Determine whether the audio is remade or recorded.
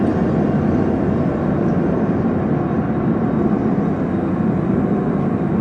recorded